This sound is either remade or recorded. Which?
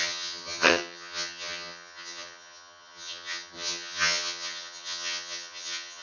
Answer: remade